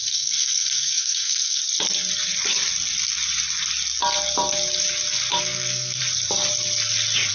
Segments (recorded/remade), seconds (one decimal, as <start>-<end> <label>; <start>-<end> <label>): 0.0-1.6 remade; 1.6-5.4 recorded; 5.4-6.0 remade; 6.0-7.3 recorded